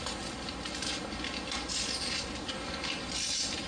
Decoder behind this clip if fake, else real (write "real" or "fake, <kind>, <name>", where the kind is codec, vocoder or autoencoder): real